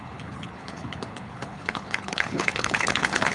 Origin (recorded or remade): remade